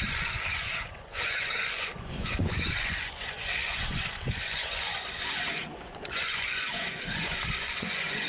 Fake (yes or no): yes